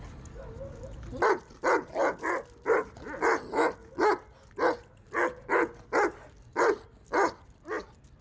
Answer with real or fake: real